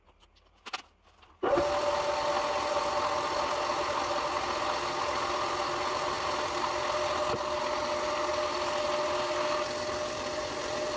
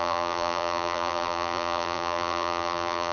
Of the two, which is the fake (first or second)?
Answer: second